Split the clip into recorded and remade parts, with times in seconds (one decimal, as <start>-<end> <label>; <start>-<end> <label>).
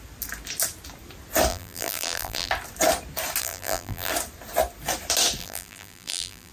0.0-1.5 recorded; 1.5-2.5 remade; 2.5-3.4 recorded; 3.4-4.1 remade; 4.1-5.4 recorded; 5.4-6.5 remade